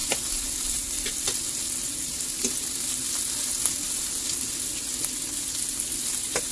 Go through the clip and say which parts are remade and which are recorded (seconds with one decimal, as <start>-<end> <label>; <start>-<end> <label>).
0.0-6.5 recorded